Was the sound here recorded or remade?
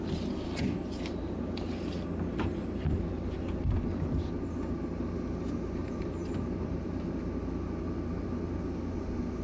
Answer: recorded